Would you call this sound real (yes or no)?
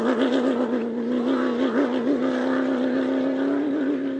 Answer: yes